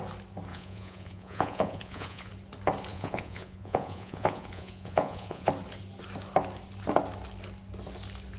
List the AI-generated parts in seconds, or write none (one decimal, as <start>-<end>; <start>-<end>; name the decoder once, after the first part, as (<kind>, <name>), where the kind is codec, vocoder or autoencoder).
0.5-2.3 (vocoder, Vocos); 2.9-5.5